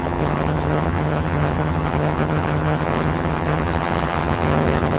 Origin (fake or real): fake